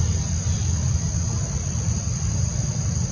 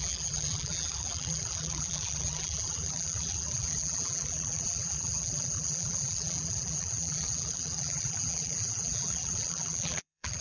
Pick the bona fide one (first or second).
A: first